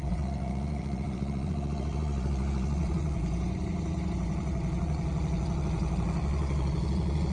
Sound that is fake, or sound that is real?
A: fake